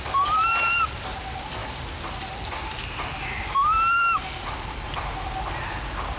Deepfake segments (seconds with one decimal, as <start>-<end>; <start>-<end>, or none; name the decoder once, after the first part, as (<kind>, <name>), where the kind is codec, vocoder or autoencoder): none